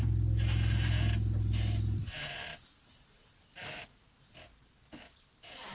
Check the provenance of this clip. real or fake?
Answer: real